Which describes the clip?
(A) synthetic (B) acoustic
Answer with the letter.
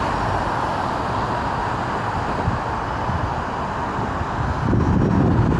B